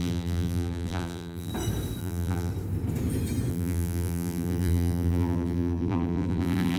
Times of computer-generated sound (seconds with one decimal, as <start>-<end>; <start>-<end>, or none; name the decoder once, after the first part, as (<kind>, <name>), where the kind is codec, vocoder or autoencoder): 0.0-1.5 (vocoder, BigVGAN v2); 2.0-2.5; 3.5-6.8